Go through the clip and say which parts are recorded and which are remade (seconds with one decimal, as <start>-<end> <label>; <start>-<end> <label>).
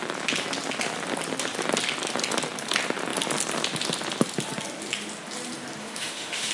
0.0-5.8 recorded; 5.8-6.5 remade